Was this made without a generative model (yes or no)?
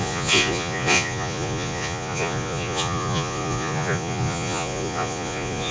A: no